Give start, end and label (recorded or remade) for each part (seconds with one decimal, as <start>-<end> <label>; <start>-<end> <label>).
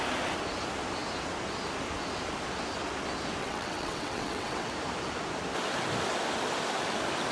0.0-3.4 recorded; 3.4-4.7 remade; 4.7-7.3 recorded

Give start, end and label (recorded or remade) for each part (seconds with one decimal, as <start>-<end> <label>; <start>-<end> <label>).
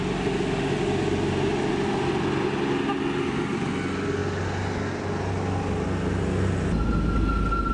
0.0-7.7 recorded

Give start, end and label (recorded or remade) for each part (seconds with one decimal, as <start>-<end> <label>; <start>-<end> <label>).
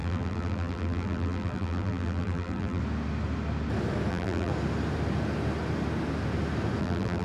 0.0-2.8 remade; 2.8-4.1 recorded; 4.1-4.5 remade; 4.5-6.8 recorded; 6.8-7.2 remade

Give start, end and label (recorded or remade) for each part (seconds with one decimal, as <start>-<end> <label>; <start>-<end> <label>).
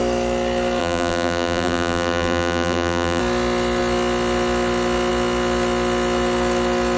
0.0-0.8 recorded; 0.8-3.2 remade; 3.2-7.0 recorded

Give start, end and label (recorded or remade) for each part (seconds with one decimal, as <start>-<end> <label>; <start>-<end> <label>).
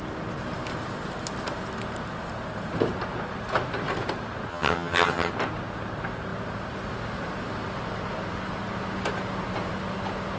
0.0-4.5 recorded; 4.5-5.3 remade; 5.3-10.4 recorded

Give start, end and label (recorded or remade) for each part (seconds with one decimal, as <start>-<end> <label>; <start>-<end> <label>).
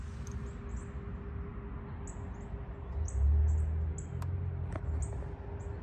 0.0-5.8 recorded